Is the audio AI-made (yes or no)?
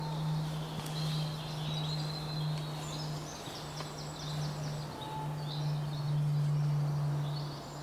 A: no